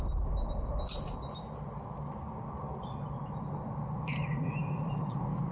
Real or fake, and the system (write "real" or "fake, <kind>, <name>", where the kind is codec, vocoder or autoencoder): real